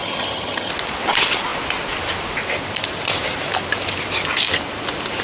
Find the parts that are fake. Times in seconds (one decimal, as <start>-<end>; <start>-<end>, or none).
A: 0.0-0.7